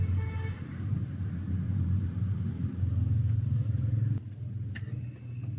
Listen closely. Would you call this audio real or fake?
real